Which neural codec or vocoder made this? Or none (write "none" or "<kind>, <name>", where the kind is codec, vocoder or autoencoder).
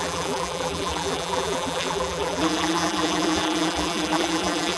vocoder, BigVGAN v2